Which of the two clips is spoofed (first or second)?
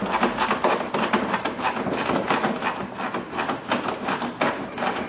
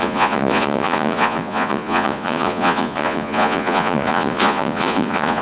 second